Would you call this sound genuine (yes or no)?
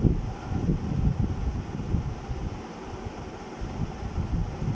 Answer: yes